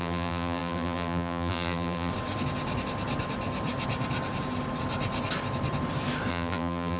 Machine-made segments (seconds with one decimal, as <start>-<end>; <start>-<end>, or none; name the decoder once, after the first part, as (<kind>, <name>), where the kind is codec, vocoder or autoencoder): 0.0-2.1 (vocoder, BigVGAN v2); 6.3-7.0